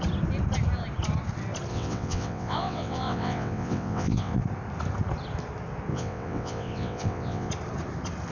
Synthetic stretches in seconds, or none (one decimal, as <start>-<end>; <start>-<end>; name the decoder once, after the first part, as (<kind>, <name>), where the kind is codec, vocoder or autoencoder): 1.7-4.4 (vocoder, WaveNeXt); 5.9-7.5